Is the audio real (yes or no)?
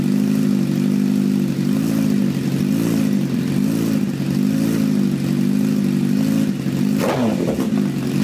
yes